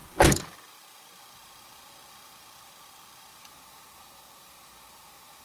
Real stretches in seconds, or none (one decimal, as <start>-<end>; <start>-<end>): 0.0-5.4